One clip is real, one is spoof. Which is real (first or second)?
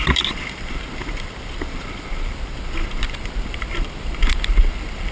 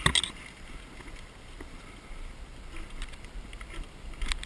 second